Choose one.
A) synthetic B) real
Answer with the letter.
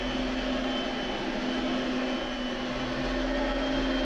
B